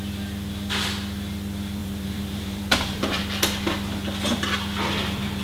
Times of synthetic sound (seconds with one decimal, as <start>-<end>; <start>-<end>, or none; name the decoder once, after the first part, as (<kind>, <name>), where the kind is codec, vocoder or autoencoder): 1.8-3.2 (vocoder, BigVGAN v2)